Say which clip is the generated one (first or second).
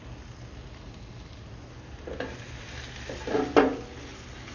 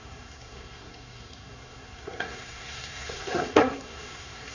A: second